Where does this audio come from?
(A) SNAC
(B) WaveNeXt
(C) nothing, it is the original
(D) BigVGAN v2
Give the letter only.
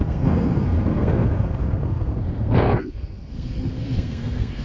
A